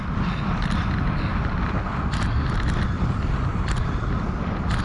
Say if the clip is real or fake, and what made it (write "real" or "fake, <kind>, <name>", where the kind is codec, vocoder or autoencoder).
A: real